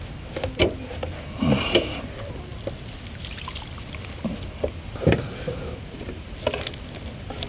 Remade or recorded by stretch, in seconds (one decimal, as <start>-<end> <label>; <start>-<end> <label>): 0.0-7.5 recorded